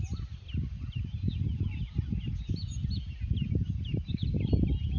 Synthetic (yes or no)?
no